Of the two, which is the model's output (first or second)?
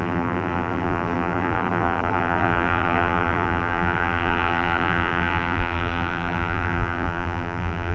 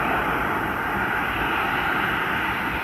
first